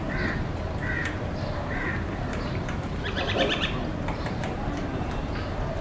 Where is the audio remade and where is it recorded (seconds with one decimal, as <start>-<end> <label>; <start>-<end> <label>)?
0.0-1.0 recorded; 1.0-4.5 remade; 4.5-5.8 recorded